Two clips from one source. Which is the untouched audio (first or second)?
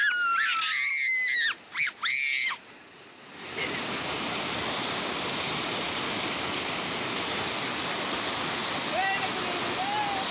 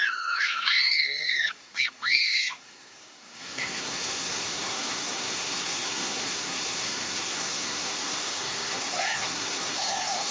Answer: first